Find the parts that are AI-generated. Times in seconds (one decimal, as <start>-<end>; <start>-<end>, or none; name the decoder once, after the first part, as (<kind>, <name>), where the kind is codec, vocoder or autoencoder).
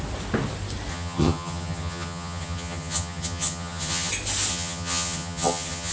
0.9-4.1 (vocoder, HiFi-GAN); 4.5-5.9